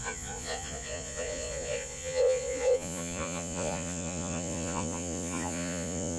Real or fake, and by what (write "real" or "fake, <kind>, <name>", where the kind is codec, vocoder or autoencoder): fake, vocoder, Vocos